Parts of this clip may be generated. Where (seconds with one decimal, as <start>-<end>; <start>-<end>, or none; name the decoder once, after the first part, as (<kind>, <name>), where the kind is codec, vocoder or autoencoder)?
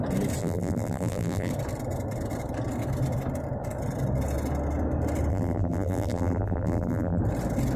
0.4-1.5 (vocoder, BigVGAN v2); 5.3-7.2